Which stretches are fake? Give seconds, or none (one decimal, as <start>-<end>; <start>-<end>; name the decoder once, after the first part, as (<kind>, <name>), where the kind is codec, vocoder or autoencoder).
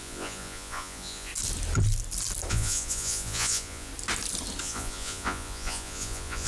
0.0-1.3 (vocoder, Vocos); 2.5-3.9; 4.6-6.5